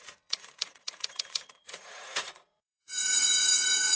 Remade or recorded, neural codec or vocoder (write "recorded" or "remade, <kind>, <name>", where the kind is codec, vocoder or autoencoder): remade, vocoder, Vocos